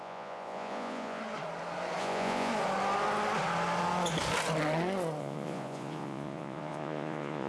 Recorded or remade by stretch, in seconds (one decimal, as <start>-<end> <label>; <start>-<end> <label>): 0.0-1.2 remade; 1.2-2.0 recorded; 2.0-2.5 remade; 2.5-5.2 recorded; 5.2-7.5 remade